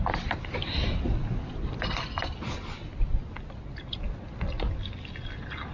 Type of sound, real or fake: real